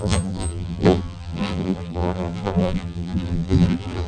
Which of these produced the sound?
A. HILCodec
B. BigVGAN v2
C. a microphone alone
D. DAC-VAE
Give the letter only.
B